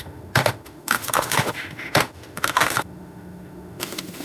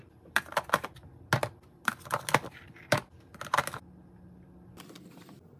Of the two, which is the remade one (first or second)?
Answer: first